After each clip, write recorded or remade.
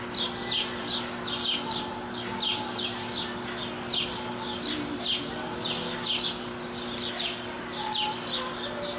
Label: recorded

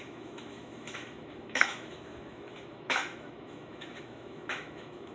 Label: remade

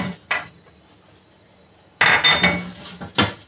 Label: recorded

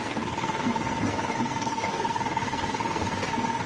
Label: remade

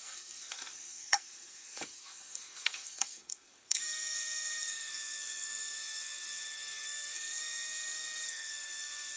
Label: remade